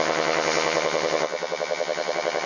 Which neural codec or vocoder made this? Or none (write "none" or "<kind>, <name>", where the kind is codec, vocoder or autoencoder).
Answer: vocoder, HiFi-GAN